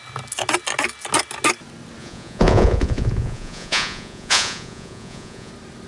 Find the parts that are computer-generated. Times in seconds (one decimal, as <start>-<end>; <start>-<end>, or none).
2.0-5.5